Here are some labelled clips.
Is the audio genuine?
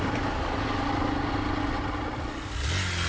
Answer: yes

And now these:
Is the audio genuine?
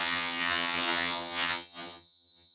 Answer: no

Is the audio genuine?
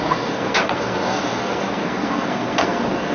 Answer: no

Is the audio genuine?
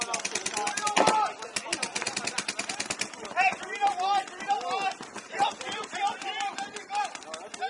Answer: yes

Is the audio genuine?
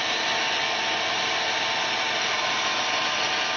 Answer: yes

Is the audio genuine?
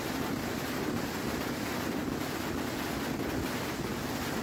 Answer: yes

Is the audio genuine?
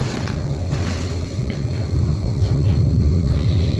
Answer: no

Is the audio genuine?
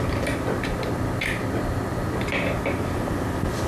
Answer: yes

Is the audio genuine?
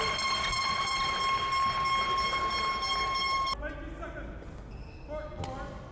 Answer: yes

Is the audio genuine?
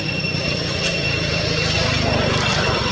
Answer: yes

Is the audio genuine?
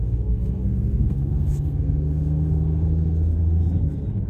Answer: no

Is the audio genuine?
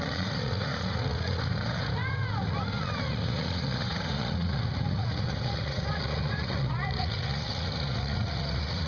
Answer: no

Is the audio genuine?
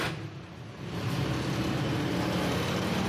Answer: yes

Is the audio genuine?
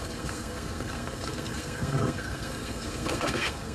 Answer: no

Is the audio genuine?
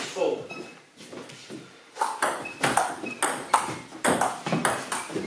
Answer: yes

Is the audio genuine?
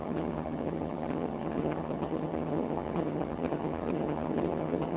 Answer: no